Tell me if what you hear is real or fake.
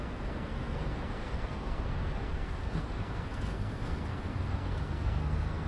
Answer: fake